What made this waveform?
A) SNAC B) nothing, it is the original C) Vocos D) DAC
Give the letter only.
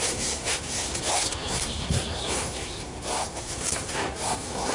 A